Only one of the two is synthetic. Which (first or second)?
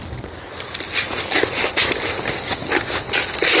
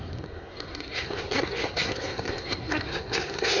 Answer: second